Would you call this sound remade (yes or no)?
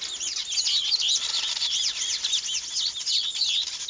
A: no